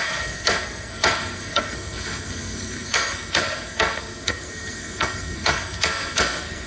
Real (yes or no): no